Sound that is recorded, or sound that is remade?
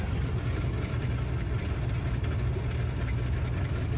recorded